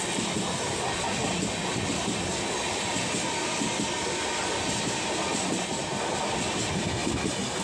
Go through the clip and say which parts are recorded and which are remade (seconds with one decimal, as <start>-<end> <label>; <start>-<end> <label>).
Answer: 0.0-7.6 recorded